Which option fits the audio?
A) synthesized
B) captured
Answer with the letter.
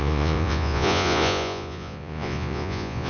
A